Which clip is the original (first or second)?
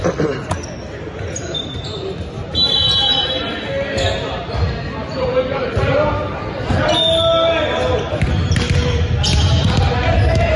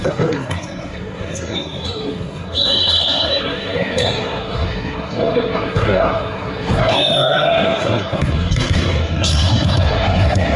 first